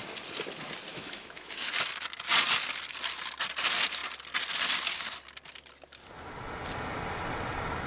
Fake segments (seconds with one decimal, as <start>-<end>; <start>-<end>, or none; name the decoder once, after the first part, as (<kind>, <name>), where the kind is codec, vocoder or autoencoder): 0.9-1.7 (autoencoder, DAC-VAE)